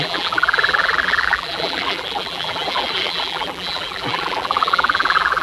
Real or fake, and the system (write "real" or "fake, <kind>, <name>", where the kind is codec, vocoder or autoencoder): fake, vocoder, BigVGAN v2